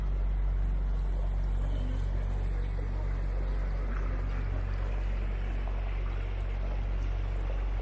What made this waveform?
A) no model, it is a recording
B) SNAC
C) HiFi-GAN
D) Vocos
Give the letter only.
A